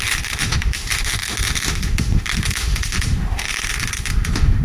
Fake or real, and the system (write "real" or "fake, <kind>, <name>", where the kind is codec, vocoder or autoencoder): fake, autoencoder, DAC-VAE